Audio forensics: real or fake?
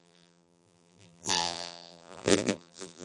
fake